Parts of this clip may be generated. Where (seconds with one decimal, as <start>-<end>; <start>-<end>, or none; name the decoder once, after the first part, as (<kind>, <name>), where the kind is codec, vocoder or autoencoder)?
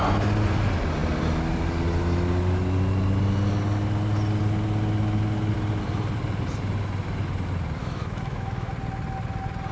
7.8-8.7 (autoencoder, DAC-VAE)